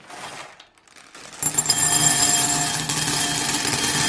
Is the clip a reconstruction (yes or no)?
no